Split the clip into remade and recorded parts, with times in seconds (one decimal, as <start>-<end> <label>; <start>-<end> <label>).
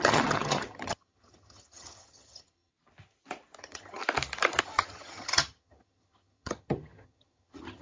0.0-2.7 remade; 2.7-3.6 recorded; 3.6-4.0 remade; 4.0-4.6 recorded; 4.6-7.8 remade